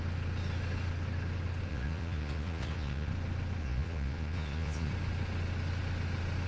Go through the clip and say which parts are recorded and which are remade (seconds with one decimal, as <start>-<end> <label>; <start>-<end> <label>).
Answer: 0.0-1.7 recorded; 1.7-3.1 remade; 3.1-3.6 recorded; 3.6-4.9 remade; 4.9-6.5 recorded

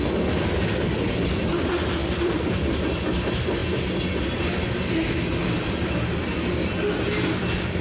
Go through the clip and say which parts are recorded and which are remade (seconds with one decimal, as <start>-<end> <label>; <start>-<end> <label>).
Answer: 0.0-2.0 recorded; 2.0-2.7 remade; 2.7-5.4 recorded; 5.4-5.9 remade; 5.9-7.8 recorded